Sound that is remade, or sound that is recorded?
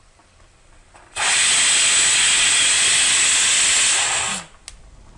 recorded